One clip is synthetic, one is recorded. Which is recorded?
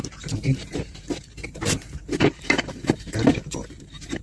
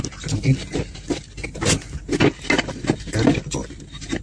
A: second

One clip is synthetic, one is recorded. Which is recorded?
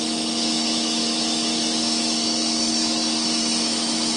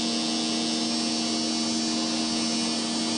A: second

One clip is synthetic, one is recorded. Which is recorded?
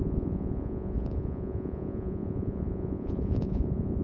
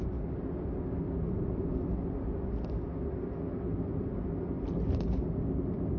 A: second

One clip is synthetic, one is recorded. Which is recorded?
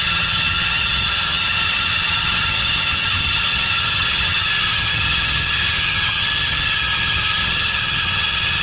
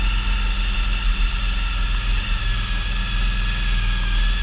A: second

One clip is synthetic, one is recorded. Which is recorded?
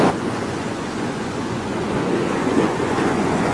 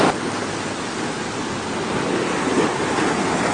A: second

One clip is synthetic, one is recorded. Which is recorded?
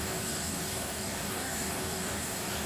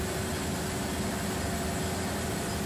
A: second